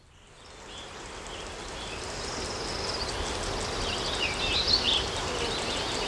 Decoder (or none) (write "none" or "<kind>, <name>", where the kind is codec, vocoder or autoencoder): none